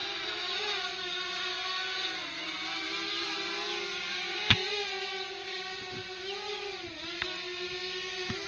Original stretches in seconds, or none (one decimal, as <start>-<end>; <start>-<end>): 0.0-1.0; 1.5-4.1; 4.6-5.3; 5.7-8.5